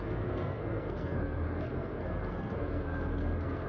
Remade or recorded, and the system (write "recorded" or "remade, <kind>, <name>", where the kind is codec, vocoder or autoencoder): remade, codec, SNAC